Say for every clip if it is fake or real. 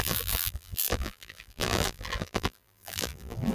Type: fake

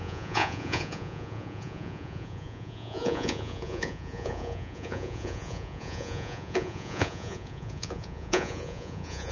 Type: fake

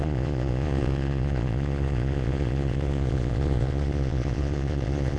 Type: fake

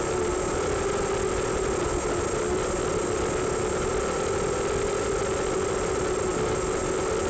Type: real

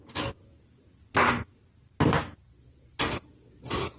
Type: real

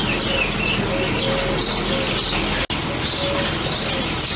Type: real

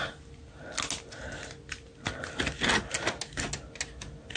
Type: real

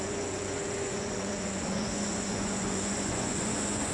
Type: fake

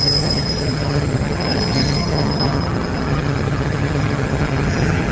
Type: fake